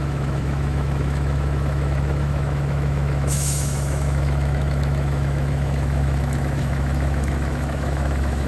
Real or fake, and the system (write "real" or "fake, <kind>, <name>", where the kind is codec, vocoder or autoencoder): fake, autoencoder, DAC-VAE